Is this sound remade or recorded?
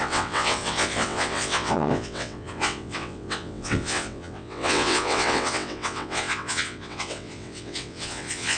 remade